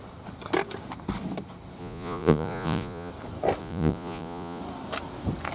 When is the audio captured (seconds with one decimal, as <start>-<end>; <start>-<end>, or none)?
0.0-1.8; 3.1-3.6; 4.6-5.5